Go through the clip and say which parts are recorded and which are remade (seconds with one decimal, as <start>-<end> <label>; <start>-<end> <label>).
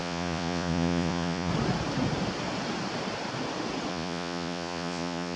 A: 0.0-1.5 remade; 1.5-3.9 recorded; 3.9-5.4 remade